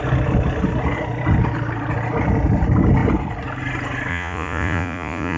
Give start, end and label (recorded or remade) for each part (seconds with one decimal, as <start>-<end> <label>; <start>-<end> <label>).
0.0-4.1 recorded; 4.1-5.4 remade